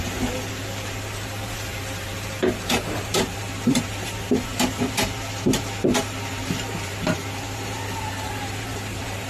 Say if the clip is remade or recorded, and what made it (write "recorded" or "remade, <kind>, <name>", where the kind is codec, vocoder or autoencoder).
remade, vocoder, BigVGAN v2